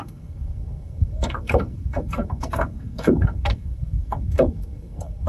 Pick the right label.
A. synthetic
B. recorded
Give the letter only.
A